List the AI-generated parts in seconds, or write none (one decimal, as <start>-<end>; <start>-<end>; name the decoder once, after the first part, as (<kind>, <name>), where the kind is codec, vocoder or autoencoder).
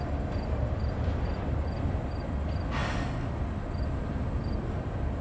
none